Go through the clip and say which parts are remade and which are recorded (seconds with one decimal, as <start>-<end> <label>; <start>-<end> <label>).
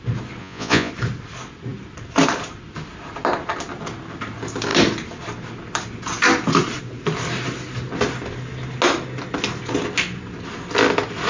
0.0-0.4 recorded; 0.4-0.9 remade; 0.9-11.3 recorded